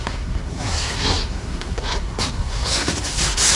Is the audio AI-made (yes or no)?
yes